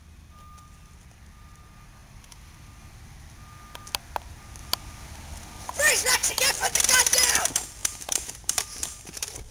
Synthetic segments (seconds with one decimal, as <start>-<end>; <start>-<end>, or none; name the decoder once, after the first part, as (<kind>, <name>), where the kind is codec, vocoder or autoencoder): 7.8-9.5 (vocoder, BigVGAN v2)